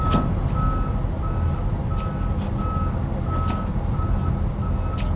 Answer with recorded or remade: recorded